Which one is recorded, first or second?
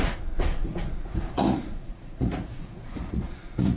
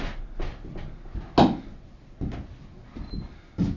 second